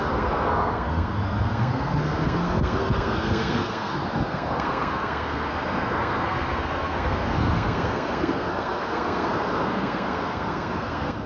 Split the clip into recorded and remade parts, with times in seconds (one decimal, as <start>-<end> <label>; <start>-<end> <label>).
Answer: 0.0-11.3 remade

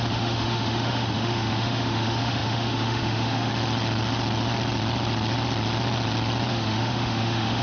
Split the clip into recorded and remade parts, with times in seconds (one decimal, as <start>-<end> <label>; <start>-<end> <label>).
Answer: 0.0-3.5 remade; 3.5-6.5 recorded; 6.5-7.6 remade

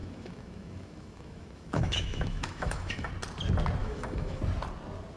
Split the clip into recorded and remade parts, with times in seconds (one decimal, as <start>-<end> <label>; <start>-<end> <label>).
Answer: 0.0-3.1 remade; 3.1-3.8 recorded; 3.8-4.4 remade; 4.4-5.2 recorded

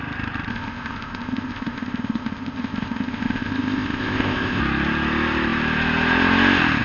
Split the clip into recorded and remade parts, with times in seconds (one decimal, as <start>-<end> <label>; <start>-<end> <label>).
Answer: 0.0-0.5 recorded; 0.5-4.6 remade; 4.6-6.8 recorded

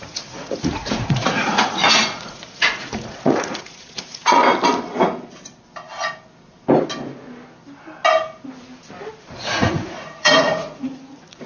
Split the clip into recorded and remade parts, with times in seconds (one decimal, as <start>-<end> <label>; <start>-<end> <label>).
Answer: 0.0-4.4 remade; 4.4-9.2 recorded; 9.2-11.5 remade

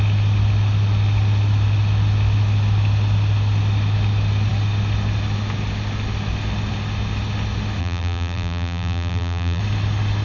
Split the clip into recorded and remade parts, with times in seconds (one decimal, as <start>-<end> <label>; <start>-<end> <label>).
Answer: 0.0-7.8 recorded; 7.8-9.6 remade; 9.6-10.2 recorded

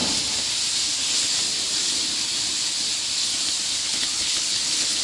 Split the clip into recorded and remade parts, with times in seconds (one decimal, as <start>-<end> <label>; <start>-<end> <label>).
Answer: 0.0-3.8 recorded; 3.8-5.0 remade